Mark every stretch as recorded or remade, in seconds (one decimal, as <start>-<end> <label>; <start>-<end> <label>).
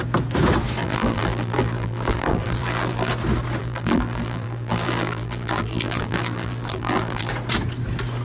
0.0-0.8 recorded; 0.8-3.1 remade; 3.1-3.6 recorded; 3.6-7.3 remade; 7.3-8.2 recorded